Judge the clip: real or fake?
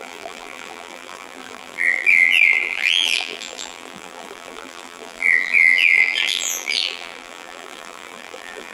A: fake